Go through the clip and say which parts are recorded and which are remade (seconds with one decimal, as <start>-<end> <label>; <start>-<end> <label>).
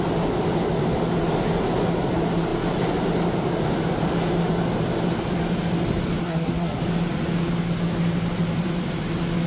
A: 0.0-6.2 recorded; 6.2-6.8 remade; 6.8-9.5 recorded